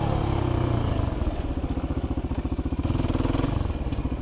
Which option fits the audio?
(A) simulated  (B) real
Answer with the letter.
B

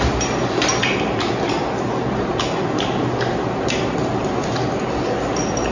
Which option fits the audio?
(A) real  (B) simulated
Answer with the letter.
A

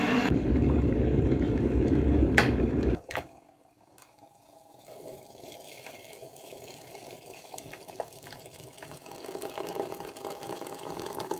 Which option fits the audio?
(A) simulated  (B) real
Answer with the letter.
A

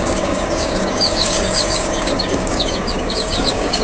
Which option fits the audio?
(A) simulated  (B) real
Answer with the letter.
A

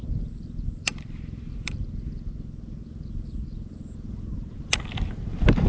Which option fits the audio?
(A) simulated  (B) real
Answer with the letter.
B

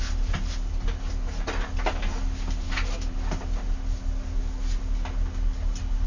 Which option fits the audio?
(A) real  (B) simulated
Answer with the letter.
A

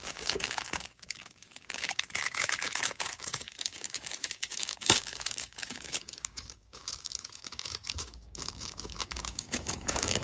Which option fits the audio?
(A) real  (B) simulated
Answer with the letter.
B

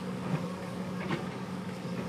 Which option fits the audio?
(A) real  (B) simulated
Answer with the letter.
B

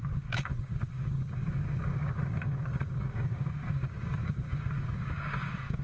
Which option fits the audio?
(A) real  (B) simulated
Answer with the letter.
B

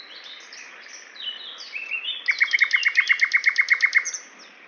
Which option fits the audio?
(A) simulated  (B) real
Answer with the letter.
B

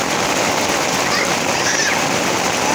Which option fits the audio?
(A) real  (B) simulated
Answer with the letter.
A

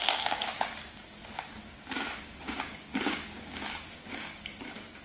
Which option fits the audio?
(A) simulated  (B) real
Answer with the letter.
A